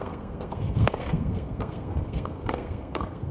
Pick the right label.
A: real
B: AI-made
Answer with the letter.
B